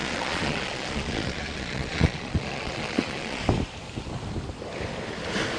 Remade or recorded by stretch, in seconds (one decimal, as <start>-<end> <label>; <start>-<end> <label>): 0.0-3.4 remade; 3.4-5.6 recorded